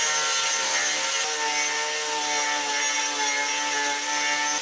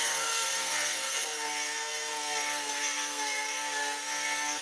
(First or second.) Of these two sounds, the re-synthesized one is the second